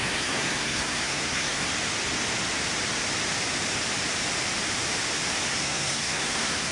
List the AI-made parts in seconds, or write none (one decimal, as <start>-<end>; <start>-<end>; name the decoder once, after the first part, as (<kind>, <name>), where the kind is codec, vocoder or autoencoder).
0.0-1.7 (codec, SNAC); 5.5-6.7